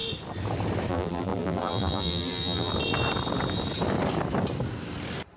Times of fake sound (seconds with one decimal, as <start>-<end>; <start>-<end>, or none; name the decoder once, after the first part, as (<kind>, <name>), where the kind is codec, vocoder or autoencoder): 0.9-2.7 (vocoder, BigVGAN v2)